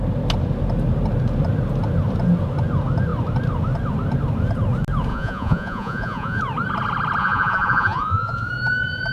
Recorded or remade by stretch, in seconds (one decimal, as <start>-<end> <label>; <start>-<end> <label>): 0.0-5.1 recorded; 5.1-6.4 remade; 6.4-7.2 recorded; 7.2-8.5 remade; 8.5-9.1 recorded